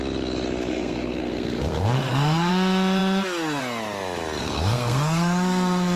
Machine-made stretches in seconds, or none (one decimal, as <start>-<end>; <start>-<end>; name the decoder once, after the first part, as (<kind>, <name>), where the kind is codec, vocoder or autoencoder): 0.7-2.5 (codec, SNAC); 4.4-6.0